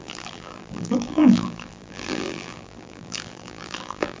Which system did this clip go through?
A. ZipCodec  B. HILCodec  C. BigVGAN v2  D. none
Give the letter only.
C